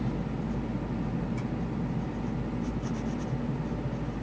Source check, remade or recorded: recorded